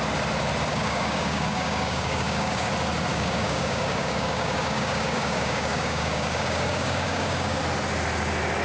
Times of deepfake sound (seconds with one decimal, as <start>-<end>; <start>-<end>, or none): 0.7-2.7; 3.1-7.6